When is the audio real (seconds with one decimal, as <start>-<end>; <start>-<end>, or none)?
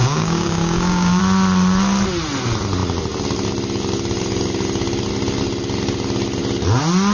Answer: 1.2-7.1